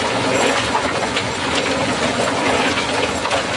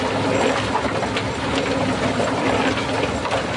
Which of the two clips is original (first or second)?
second